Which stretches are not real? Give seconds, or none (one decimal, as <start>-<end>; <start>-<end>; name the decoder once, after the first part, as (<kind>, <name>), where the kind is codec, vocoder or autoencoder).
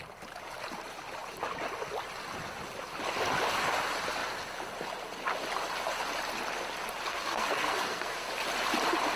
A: 7.1-8.3 (codec, SNAC)